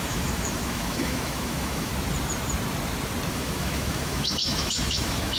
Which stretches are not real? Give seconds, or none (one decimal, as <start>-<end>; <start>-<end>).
0.0-1.9; 3.3-5.4